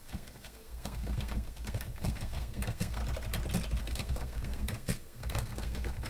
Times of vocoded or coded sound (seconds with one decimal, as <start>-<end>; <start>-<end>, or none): 0.0-3.0; 3.8-6.1